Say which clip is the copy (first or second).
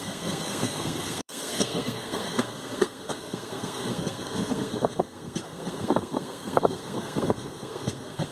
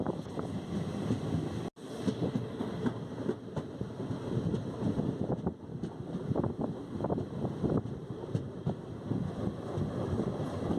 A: first